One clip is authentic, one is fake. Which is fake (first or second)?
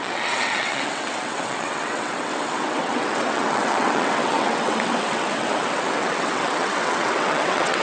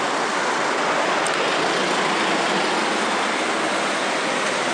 first